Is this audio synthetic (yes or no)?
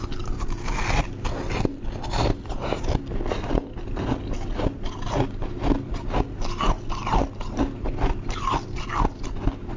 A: no